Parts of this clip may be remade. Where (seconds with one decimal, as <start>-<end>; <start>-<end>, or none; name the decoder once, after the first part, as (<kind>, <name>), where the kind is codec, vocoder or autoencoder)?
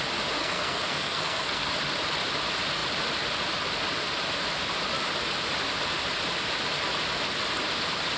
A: 0.4-1.7 (codec, SNAC)